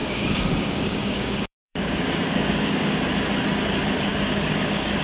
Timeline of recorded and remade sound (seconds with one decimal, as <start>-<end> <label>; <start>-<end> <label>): 0.0-3.0 remade; 3.0-4.1 recorded; 4.1-5.0 remade